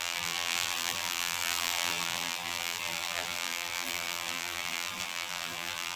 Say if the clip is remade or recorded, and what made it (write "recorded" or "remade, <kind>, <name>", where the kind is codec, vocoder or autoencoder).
remade, vocoder, BigVGAN v2